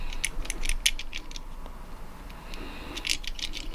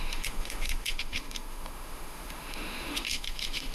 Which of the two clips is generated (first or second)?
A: second